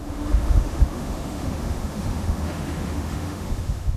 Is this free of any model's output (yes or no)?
no